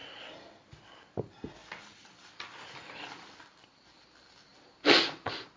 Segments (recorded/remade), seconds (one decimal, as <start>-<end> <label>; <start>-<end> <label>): 0.0-1.6 recorded; 1.6-4.0 remade; 4.0-5.6 recorded